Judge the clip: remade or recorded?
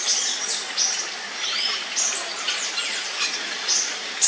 recorded